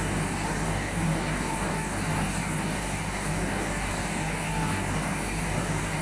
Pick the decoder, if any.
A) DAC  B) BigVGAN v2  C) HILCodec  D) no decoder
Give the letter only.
A